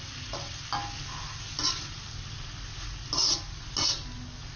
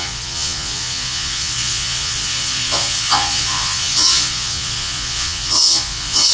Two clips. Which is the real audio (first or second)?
first